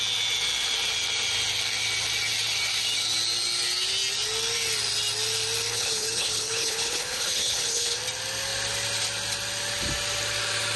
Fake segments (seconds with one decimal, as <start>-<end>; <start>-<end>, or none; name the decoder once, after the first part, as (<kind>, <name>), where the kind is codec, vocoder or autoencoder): 5.7-8.0 (codec, HILCodec)